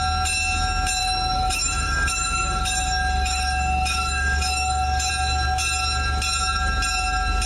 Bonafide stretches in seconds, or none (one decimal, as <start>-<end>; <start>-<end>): 0.0-1.0; 5.1-7.5